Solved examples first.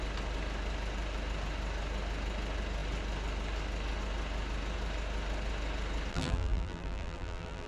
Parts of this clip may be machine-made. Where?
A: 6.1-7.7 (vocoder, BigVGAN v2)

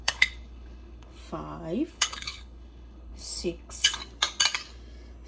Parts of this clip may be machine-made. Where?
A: 0.0-1.2 (codec, HILCodec); 1.9-4.0

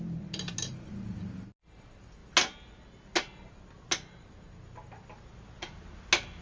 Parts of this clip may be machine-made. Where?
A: none

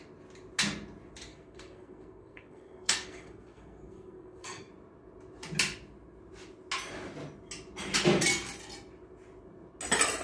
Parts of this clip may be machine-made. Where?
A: 1.3-4.7 (codec, SNAC)

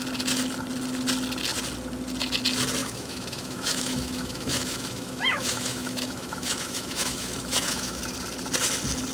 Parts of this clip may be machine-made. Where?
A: 2.8-8.0 (autoencoder, DAC-VAE)

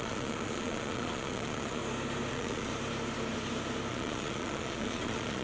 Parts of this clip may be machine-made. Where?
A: 0.0-1.8 (vocoder, Vocos); 2.3-2.7; 3.9-5.4

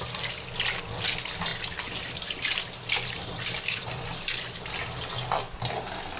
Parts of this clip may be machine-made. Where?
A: none

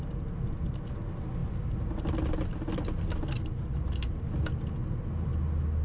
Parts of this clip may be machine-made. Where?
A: none